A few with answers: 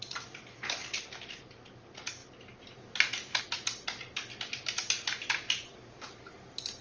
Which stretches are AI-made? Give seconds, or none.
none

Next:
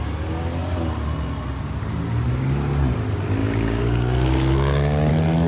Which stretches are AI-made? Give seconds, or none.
3.4-5.1

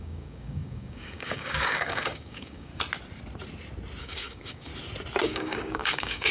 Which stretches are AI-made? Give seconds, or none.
0.0-2.7; 4.0-4.7; 5.2-6.3

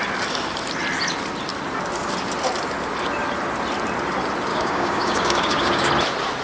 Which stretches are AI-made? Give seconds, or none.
4.5-5.9

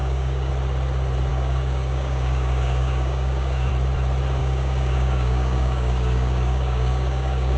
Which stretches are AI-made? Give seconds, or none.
0.0-0.5; 1.3-3.7; 4.4-7.6

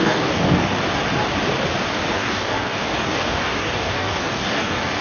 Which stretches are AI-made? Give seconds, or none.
0.0-0.7; 2.1-5.0